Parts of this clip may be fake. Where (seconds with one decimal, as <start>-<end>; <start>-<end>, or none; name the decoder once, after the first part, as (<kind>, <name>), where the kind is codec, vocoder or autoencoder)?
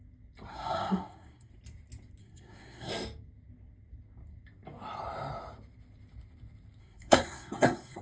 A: 0.5-1.5 (codec, SNAC); 2.2-2.9; 6.8-8.0